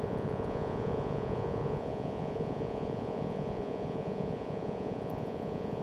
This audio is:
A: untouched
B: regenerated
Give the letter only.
B